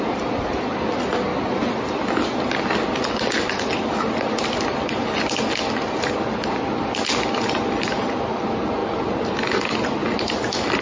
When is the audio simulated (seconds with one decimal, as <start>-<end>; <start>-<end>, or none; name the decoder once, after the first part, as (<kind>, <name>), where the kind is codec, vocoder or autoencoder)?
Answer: none